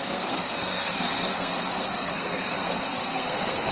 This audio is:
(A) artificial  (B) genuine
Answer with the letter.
A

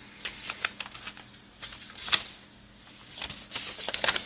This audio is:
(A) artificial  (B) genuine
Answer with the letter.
B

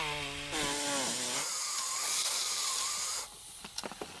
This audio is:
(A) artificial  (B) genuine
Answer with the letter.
B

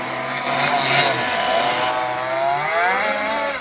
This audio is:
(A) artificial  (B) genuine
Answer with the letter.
B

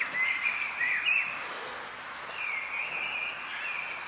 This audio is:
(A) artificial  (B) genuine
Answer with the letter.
B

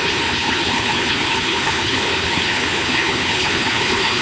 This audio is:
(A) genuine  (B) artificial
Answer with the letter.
B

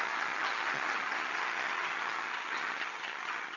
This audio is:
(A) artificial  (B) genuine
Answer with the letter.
A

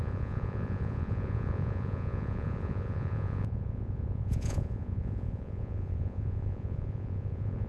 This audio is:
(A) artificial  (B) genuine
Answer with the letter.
A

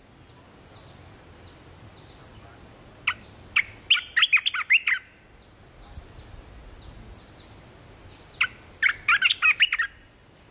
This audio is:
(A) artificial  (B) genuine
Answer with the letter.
B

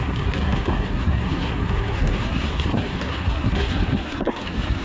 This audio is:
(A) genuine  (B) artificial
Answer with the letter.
B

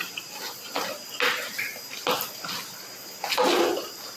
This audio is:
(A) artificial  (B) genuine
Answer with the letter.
B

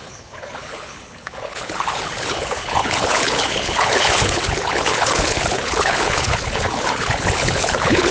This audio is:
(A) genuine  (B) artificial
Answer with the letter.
B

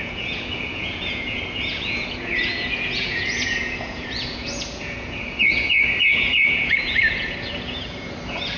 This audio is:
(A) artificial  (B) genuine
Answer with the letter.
A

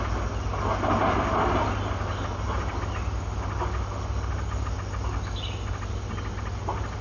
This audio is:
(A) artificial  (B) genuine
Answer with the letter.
B